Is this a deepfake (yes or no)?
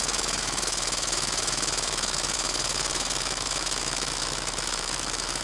yes